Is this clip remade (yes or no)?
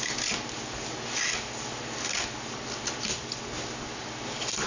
no